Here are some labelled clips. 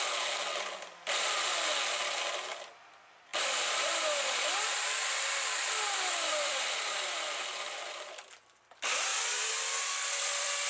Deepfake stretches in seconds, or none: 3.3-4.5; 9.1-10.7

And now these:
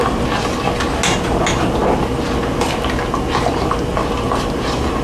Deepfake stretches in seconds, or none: none

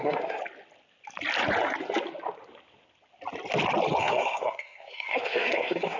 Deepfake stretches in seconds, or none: 0.0-0.4; 4.0-6.0

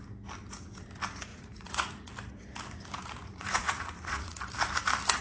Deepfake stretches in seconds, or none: 1.3-2.1; 3.2-4.4

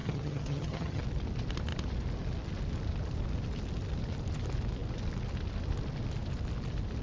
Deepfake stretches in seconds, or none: 0.0-1.0

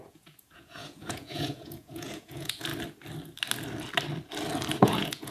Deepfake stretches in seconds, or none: 0.0-2.7; 4.8-5.3